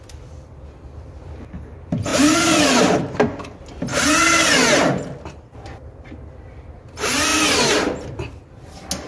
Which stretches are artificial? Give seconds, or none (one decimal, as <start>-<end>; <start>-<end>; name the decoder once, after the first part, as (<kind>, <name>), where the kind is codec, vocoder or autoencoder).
0.0-3.9 (vocoder, BigVGAN v2); 6.3-7.3